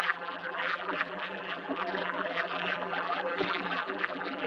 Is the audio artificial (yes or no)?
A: yes